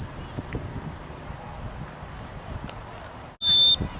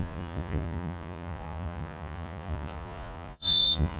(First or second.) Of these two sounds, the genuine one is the first